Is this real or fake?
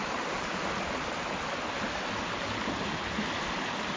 real